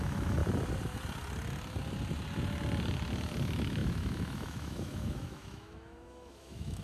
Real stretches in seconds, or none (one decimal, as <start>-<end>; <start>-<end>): 0.4-3.4